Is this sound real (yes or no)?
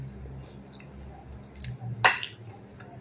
yes